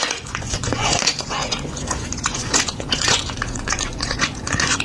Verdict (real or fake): fake